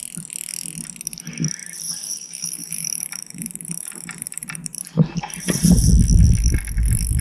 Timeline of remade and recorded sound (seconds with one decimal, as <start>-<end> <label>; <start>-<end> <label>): 0.0-1.6 recorded; 1.6-5.9 remade; 5.9-7.2 recorded